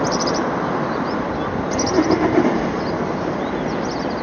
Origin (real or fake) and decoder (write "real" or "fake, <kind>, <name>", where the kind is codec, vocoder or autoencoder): real